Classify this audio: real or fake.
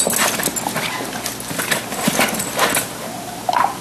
real